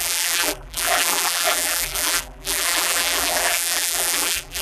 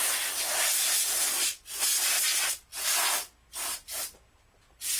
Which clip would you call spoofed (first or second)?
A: first